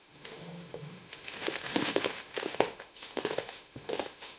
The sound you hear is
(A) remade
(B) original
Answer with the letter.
A